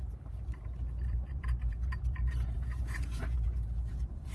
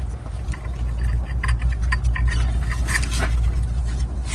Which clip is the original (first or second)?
second